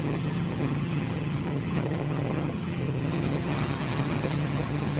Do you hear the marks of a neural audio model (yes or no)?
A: yes